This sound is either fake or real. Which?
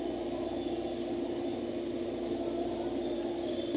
real